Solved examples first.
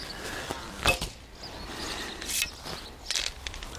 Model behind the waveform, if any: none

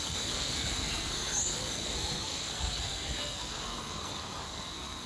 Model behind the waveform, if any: codec, SNAC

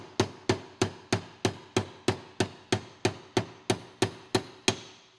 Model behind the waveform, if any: none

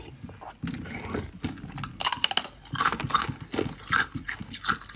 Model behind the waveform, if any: none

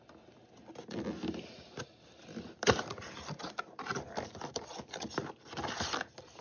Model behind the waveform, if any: none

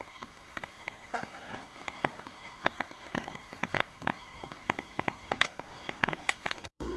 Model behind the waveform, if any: codec, SNAC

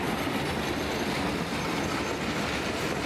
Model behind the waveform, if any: none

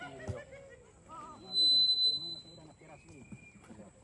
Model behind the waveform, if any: none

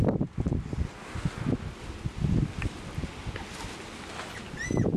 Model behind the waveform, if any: none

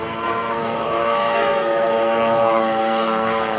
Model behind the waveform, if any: codec, SNAC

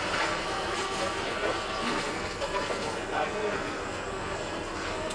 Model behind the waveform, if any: codec, SNAC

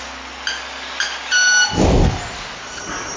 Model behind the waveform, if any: none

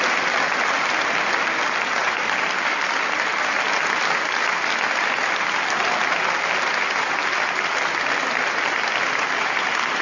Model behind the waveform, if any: none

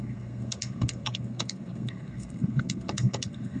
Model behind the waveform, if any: codec, SNAC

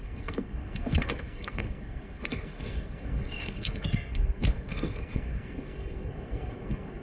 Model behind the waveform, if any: codec, SNAC